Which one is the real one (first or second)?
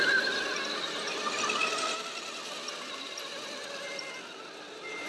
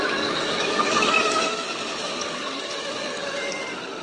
first